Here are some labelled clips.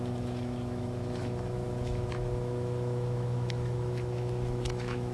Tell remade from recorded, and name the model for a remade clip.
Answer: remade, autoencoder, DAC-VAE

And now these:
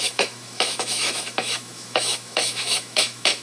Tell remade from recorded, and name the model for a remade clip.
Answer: remade, autoencoder, DAC-VAE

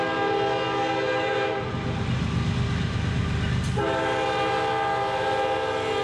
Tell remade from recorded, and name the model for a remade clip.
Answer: recorded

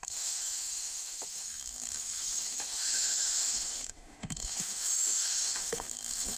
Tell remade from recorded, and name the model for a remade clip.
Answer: remade, autoencoder, DAC-VAE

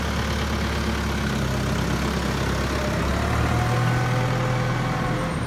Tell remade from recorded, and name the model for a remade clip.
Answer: recorded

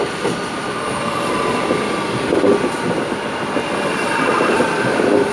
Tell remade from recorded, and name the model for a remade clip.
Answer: recorded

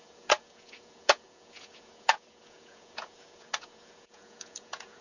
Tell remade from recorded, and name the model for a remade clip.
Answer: remade, vocoder, Vocos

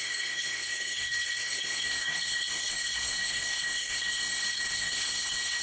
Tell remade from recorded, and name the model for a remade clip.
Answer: remade, codec, SNAC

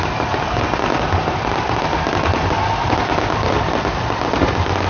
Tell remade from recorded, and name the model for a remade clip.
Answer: recorded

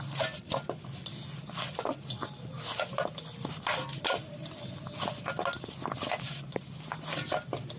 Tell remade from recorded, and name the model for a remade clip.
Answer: recorded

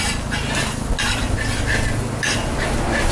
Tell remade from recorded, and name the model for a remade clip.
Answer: recorded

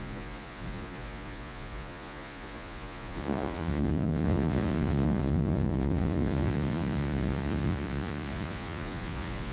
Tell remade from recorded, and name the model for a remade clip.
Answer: remade, vocoder, Vocos